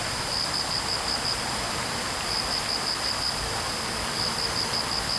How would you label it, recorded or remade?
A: remade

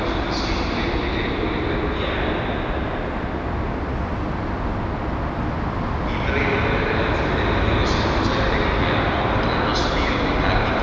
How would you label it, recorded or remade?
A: recorded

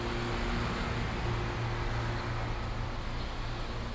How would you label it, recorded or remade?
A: recorded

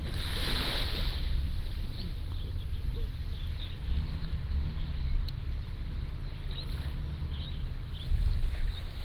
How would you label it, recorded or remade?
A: recorded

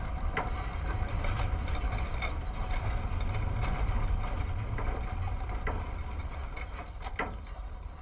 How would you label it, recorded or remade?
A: recorded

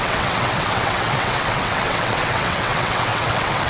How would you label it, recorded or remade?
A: remade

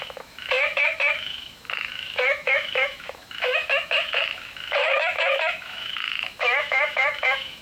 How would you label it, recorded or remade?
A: remade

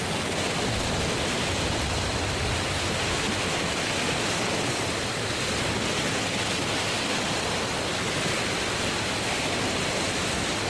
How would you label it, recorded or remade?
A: recorded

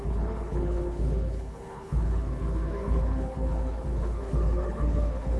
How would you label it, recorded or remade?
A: remade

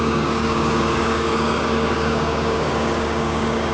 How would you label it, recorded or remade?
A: remade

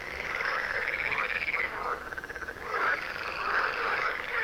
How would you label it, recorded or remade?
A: remade